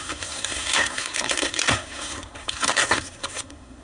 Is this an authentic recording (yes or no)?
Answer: no